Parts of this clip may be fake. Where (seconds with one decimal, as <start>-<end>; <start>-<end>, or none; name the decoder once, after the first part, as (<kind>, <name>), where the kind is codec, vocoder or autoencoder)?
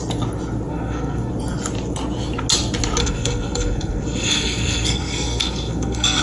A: 0.7-1.3 (codec, SNAC); 3.0-6.2